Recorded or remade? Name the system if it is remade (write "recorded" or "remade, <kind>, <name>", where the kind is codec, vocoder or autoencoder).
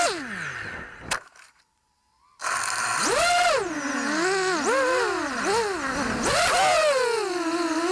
recorded